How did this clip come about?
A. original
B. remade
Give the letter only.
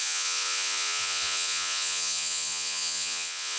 B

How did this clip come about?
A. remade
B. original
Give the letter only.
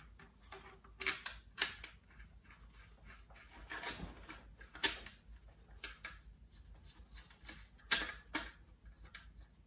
B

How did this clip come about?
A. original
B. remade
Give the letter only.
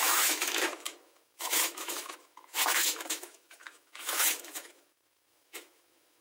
B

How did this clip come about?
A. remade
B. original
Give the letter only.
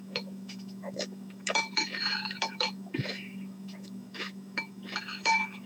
A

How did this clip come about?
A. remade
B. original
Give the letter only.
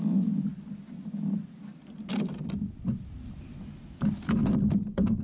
B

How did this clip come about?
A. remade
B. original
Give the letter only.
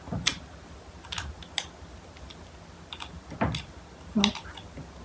B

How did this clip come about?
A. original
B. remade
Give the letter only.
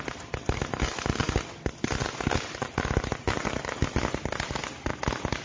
A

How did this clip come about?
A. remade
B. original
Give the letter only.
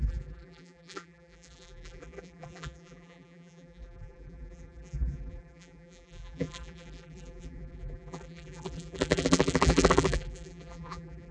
A